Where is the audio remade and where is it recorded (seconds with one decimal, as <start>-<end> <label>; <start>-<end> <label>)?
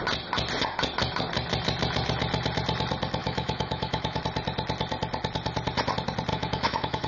0.0-3.2 recorded; 3.2-4.2 remade; 4.2-6.3 recorded; 6.3-7.1 remade